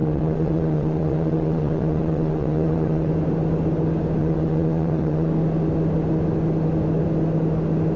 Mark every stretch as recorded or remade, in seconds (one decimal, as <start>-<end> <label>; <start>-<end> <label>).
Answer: 0.0-3.1 remade; 3.1-4.2 recorded; 4.2-5.3 remade; 5.3-8.0 recorded